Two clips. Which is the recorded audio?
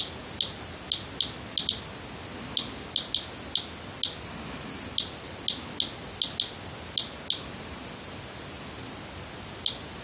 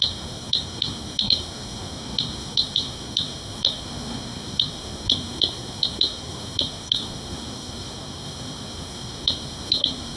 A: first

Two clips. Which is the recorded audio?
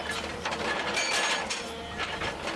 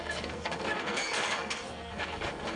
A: first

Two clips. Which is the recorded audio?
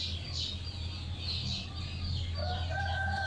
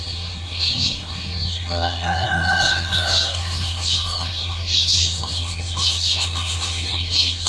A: first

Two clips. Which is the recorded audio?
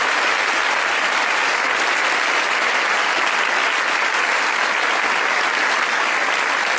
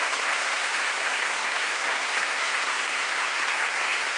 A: first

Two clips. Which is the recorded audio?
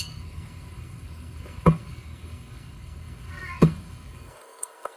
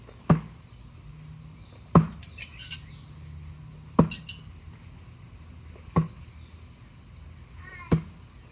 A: second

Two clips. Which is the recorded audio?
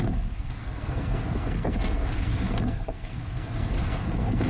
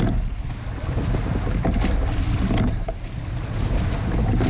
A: second